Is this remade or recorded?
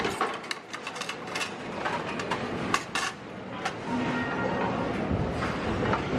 recorded